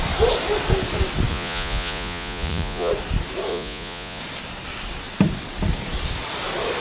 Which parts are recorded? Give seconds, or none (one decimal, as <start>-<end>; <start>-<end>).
0.0-1.3; 2.9-3.5; 4.2-6.8